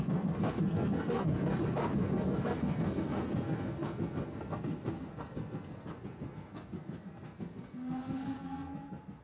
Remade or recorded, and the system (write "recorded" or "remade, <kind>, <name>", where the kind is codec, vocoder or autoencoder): remade, codec, SNAC